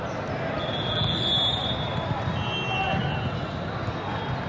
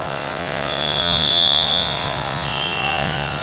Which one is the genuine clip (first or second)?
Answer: first